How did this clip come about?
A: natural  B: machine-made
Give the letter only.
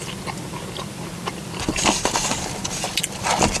A